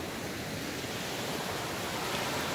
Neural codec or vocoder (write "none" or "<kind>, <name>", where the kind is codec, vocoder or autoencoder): none